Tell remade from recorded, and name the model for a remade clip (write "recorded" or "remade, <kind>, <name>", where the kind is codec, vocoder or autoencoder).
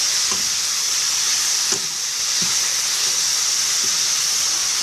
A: recorded